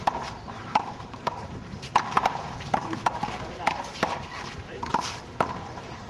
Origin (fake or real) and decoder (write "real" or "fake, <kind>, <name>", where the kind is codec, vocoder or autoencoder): fake, vocoder, BigVGAN v2